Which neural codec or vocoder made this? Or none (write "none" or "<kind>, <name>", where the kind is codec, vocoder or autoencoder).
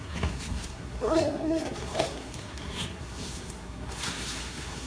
codec, SNAC